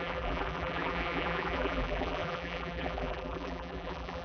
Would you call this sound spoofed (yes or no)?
yes